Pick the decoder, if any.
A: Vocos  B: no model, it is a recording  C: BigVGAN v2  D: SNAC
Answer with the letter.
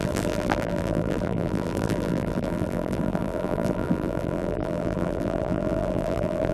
C